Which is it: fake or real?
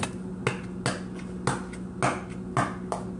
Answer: real